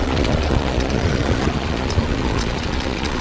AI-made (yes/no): yes